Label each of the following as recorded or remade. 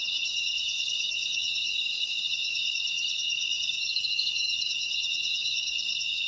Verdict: remade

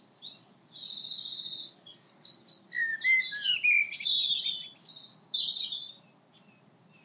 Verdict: recorded